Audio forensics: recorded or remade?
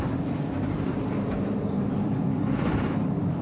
remade